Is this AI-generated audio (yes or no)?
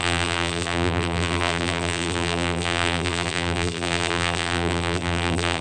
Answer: yes